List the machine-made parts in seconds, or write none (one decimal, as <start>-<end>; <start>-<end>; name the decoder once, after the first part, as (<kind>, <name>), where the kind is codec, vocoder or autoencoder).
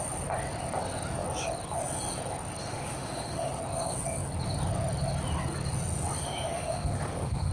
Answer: 2.6-3.5 (autoencoder, DAC-VAE); 6.2-7.5